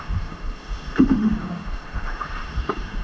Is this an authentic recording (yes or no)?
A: no